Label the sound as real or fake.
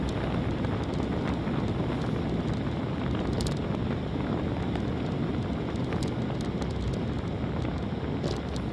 real